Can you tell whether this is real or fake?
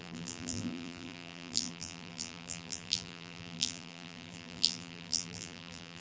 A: fake